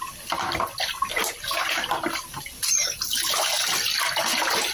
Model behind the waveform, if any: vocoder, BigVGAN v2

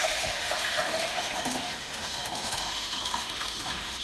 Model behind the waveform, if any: autoencoder, DAC-VAE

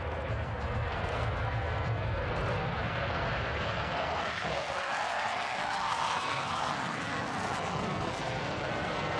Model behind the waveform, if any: codec, SNAC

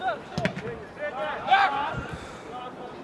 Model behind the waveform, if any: none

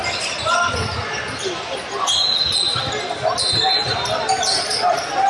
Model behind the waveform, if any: none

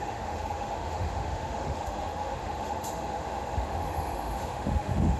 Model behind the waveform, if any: autoencoder, DAC-VAE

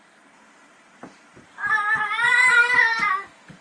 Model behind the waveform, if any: vocoder, BigVGAN v2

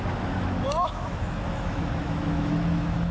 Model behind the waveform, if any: autoencoder, DAC-VAE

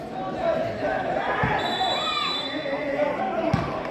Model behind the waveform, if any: none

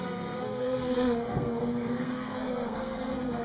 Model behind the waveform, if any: codec, SNAC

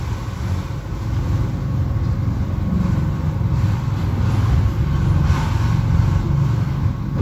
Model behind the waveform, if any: none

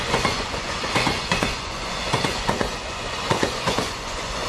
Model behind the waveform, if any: vocoder, Vocos